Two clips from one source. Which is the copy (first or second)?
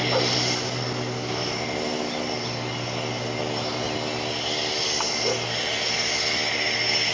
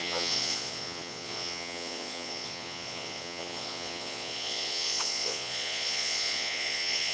second